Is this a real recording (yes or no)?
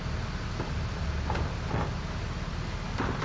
yes